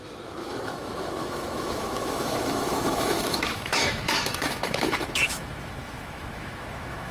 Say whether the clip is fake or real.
fake